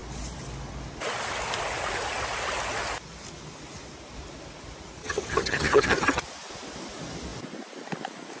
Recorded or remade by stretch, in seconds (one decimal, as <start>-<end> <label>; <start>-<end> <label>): 0.0-5.0 recorded; 5.0-6.2 remade; 6.2-8.4 recorded